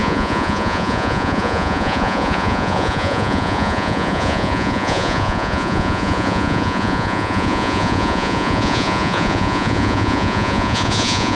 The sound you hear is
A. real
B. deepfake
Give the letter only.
B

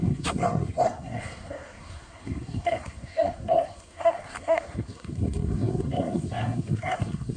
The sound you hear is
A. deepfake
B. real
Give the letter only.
A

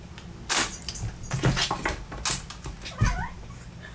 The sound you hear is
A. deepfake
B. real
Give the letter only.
B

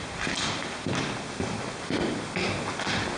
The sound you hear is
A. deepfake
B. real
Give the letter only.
B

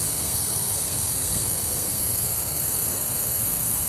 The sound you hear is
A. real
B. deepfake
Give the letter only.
B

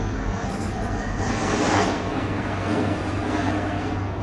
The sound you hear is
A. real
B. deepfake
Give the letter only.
B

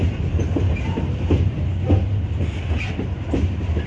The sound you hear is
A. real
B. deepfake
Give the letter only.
A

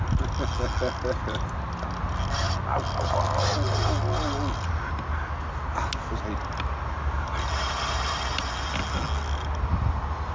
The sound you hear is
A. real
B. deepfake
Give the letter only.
A